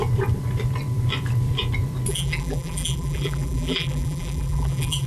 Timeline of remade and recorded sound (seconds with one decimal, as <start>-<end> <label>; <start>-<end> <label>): 0.0-2.1 recorded; 2.1-5.1 remade